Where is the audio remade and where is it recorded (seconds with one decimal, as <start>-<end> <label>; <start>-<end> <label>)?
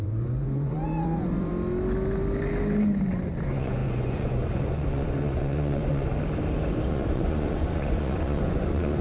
0.0-1.5 remade; 1.5-3.3 recorded; 3.3-6.1 remade; 6.1-6.9 recorded; 6.9-9.0 remade